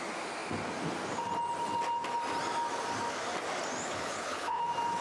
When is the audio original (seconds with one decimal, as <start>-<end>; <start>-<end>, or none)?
0.0-3.9; 4.6-5.0